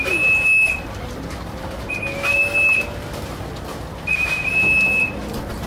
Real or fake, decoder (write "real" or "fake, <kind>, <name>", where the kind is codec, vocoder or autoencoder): real